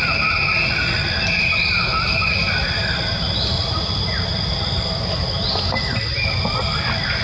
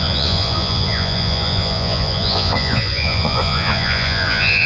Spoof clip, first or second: second